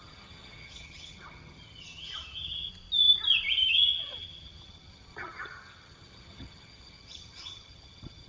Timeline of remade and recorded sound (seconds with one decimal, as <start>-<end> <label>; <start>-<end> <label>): 0.0-2.7 remade; 2.7-3.5 recorded; 3.5-8.3 remade